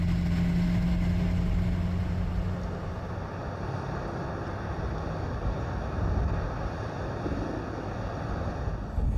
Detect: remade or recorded recorded